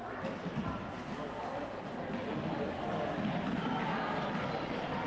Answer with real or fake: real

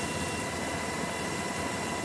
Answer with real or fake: real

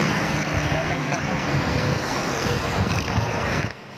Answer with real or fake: fake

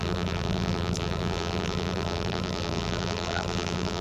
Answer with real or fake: fake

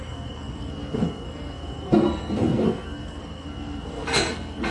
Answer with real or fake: fake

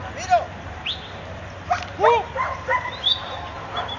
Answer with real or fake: real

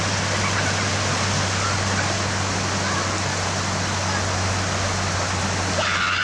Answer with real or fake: real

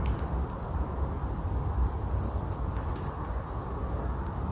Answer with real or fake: real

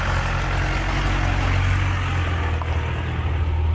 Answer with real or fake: real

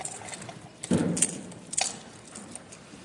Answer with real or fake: real